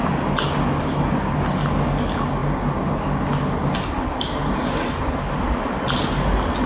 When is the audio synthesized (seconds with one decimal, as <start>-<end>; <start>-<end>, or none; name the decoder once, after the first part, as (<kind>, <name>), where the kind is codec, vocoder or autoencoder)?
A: none